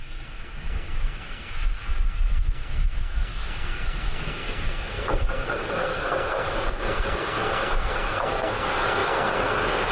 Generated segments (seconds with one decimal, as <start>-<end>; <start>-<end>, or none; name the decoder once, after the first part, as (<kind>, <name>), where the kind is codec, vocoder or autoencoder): 0.0-9.9 (codec, SNAC)